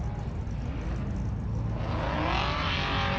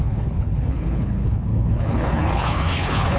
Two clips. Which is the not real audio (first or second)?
second